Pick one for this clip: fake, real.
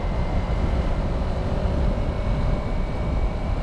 fake